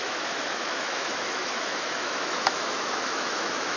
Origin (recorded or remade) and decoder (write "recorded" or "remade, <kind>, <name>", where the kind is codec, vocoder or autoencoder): remade, autoencoder, DAC-VAE